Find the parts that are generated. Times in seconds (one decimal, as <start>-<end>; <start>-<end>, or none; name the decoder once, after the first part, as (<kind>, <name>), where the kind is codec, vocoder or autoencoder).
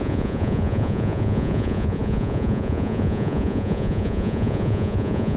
0.0-5.4 (vocoder, Vocos)